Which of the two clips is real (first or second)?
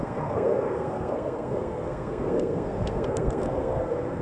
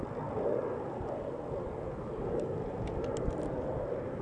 second